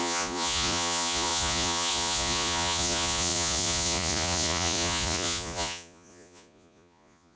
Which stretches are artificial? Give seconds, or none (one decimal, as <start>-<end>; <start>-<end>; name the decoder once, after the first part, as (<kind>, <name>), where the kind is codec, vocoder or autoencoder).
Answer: 0.0-7.4 (vocoder, Vocos)